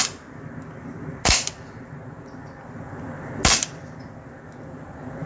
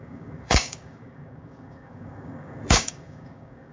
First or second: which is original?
first